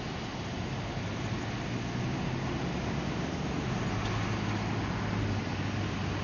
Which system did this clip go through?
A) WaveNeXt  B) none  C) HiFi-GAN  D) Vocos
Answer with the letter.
B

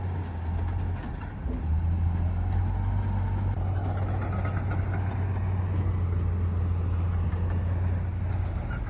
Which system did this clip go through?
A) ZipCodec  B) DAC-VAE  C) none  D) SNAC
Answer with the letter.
C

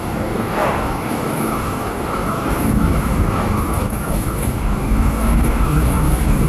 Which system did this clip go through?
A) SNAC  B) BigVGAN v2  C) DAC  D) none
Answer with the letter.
C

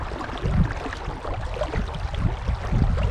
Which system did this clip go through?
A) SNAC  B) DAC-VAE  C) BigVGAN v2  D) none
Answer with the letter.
D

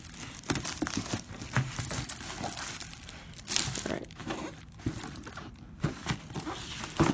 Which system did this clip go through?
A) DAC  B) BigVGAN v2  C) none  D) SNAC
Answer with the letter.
B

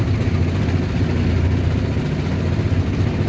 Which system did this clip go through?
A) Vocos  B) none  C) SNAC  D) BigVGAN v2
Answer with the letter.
B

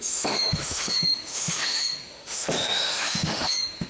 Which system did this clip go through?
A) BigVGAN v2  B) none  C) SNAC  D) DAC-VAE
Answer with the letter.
D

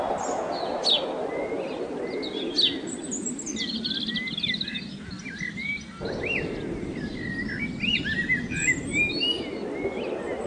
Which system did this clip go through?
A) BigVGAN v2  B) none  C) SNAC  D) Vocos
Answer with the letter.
B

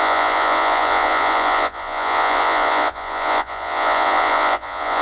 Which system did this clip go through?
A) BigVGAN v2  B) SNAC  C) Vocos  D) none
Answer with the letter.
C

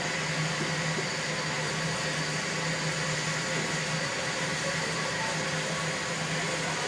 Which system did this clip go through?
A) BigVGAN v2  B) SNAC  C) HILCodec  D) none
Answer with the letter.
D